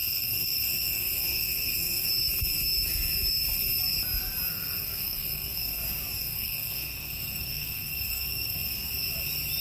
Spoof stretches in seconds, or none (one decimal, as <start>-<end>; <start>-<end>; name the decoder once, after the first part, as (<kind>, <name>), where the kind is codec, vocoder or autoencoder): 0.0-2.1 (codec, SNAC); 4.5-5.8; 6.2-8.9